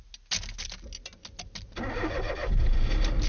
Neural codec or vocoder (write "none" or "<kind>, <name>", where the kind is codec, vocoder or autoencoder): none